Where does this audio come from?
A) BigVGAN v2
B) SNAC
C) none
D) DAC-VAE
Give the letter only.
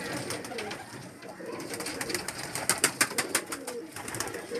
C